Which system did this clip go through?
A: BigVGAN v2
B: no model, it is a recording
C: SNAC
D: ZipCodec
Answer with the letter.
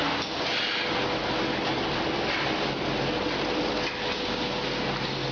A